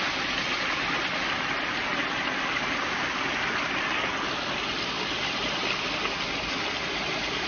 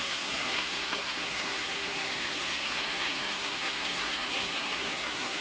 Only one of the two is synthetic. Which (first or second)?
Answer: second